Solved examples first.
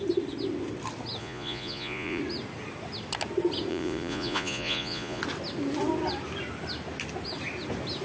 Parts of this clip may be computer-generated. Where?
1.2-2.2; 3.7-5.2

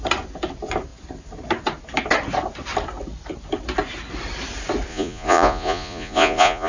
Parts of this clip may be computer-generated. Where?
4.9-6.7

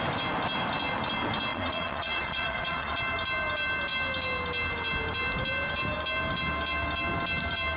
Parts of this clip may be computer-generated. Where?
1.5-3.0

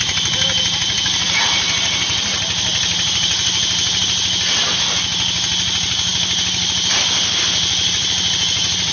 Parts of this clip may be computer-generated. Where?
none

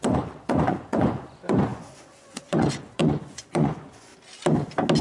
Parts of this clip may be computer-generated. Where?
0.0-4.1

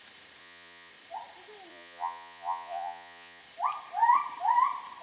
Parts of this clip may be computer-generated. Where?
0.4-0.9; 1.7-3.4

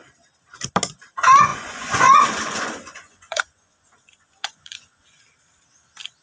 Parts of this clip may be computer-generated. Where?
1.5-5.2